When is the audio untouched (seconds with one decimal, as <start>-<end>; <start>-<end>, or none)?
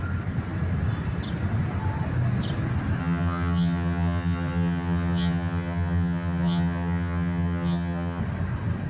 0.0-3.0; 8.2-8.9